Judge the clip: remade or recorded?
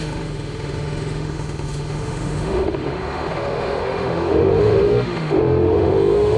remade